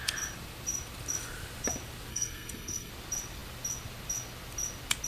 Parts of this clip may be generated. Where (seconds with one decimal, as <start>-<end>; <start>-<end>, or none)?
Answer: 2.1-2.9